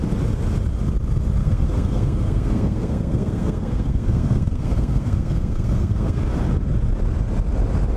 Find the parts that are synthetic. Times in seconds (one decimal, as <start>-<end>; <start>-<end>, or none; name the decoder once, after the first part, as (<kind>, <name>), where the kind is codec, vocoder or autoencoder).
1.4-6.2 (codec, SNAC)